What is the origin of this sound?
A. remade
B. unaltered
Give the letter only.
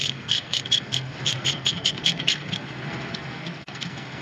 A